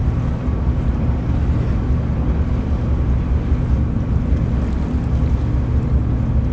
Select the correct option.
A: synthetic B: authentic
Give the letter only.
B